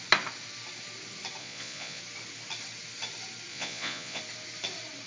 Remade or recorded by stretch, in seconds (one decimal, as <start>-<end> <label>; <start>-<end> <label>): 0.0-1.4 recorded; 1.4-2.0 remade; 2.0-3.5 recorded; 3.5-4.2 remade; 4.2-5.1 recorded